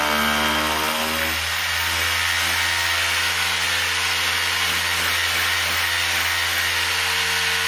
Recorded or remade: recorded